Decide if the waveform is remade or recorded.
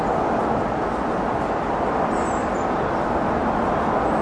recorded